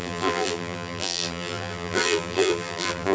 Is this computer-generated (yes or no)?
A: yes